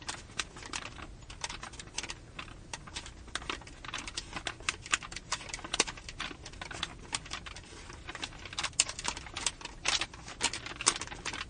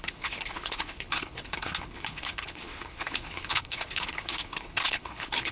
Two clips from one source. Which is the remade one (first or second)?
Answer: second